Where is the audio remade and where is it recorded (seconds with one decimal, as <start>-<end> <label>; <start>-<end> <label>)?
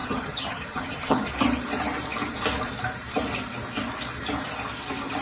0.0-1.3 remade; 1.3-5.2 recorded